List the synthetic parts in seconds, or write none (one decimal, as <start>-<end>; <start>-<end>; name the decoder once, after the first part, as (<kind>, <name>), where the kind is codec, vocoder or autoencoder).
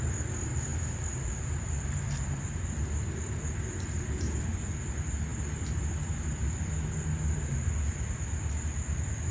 0.7-2.0 (vocoder, BigVGAN v2)